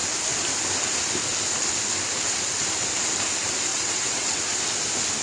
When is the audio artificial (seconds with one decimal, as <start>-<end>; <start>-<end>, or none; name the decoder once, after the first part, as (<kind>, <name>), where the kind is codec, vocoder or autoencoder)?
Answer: 3.7-4.4 (vocoder, WaveNeXt)